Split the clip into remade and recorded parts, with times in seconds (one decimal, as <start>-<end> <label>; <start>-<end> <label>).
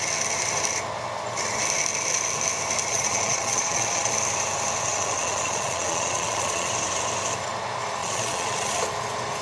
0.0-2.9 recorded; 2.9-4.1 remade; 4.1-4.9 recorded; 4.9-6.7 remade; 6.7-8.0 recorded; 8.0-8.8 remade; 8.8-9.4 recorded